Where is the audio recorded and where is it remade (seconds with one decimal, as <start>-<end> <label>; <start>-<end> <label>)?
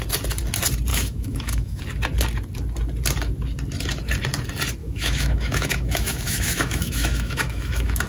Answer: 0.0-0.9 recorded; 0.9-1.8 remade; 1.8-4.8 recorded; 4.8-8.1 remade